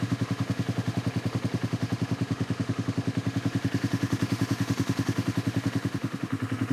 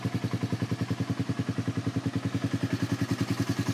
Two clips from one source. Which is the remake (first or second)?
first